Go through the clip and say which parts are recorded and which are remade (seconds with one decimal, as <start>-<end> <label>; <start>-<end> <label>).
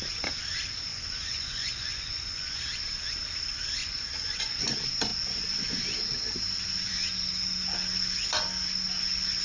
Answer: 0.0-0.9 recorded; 0.9-2.6 remade; 2.6-3.8 recorded; 3.8-4.6 remade; 4.6-9.4 recorded